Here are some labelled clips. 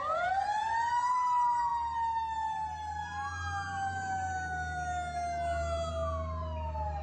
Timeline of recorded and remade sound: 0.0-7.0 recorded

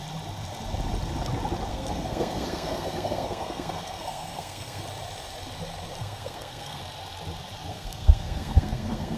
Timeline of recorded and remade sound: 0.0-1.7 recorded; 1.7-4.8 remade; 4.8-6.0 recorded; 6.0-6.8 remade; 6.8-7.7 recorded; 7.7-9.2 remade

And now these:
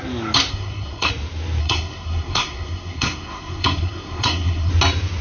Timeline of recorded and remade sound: 0.0-0.5 recorded; 0.5-1.1 remade; 1.1-1.6 recorded; 1.6-4.7 remade; 4.7-5.2 recorded

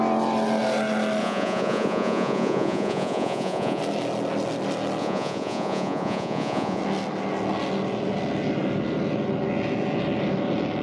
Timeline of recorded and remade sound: 0.0-1.2 recorded; 1.2-3.8 remade; 3.8-5.0 recorded; 5.0-6.8 remade; 6.8-10.8 recorded

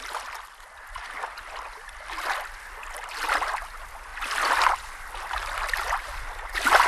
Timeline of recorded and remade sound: 0.0-6.9 recorded

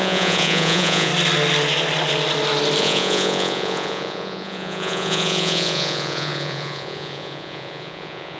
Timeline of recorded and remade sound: 0.0-1.1 remade; 1.1-2.8 recorded; 2.8-8.4 remade